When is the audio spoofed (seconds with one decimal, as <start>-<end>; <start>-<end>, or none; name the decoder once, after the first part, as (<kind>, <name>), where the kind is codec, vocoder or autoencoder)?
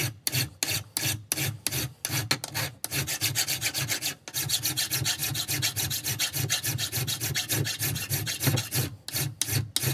none